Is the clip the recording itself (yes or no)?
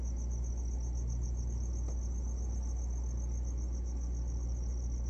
yes